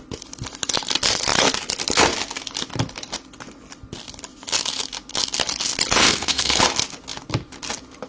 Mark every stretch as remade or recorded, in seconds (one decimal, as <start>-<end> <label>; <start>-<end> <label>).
0.0-6.0 recorded; 6.0-6.6 remade; 6.6-8.1 recorded